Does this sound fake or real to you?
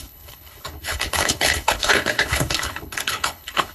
fake